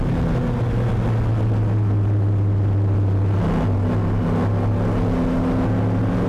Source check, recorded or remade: recorded